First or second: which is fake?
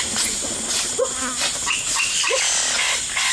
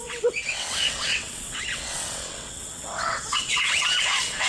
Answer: second